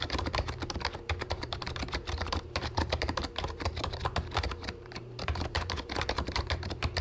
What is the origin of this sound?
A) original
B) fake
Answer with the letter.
B